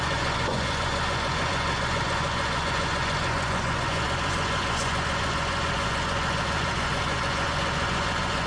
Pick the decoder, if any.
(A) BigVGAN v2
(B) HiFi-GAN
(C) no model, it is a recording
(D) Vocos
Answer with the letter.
D